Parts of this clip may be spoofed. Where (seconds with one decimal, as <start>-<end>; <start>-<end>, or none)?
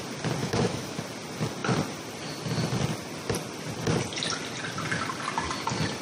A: 0.4-1.0